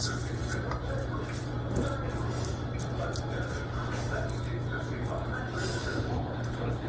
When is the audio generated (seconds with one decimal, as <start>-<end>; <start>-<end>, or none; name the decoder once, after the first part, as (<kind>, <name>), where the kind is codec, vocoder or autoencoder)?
5.8-6.9 (codec, HILCodec)